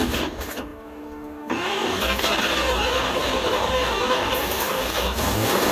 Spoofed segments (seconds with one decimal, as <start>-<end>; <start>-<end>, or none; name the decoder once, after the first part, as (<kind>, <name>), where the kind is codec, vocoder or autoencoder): 0.0-5.7 (codec, DAC)